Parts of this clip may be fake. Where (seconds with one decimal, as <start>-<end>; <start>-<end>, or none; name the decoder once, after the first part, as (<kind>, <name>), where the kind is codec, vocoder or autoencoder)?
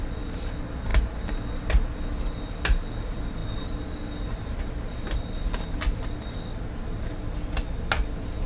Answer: none